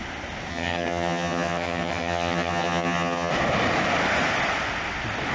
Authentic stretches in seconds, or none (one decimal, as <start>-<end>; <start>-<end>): 0.0-0.5; 3.3-5.3

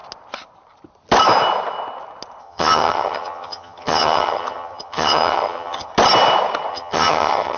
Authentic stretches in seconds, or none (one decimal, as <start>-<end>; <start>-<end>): 0.0-2.4; 5.9-6.7